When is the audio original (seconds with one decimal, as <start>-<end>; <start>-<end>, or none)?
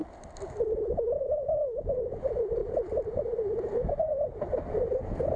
none